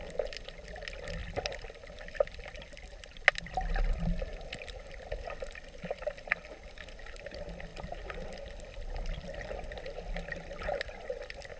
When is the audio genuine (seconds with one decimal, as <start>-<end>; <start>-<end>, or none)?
0.0-7.7; 10.1-11.6